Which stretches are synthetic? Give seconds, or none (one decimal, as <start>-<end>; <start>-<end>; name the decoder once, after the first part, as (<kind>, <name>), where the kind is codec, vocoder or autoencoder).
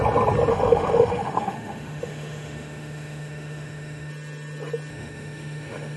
0.5-4.1 (autoencoder, DAC-VAE); 4.9-6.0